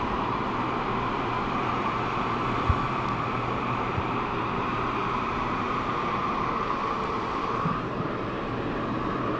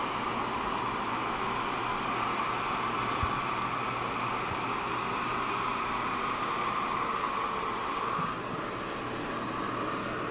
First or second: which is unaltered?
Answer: second